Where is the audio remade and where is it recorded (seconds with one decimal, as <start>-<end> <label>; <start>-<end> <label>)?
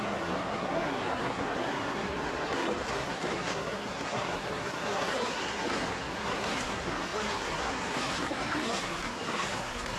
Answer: 0.0-10.0 remade